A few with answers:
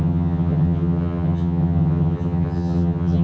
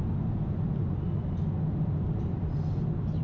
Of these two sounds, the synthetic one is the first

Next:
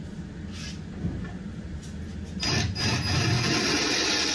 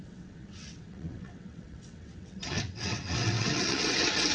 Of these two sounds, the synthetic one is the second